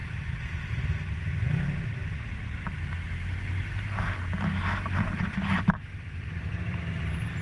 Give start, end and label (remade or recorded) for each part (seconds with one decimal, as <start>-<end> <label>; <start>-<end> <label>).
0.0-7.4 recorded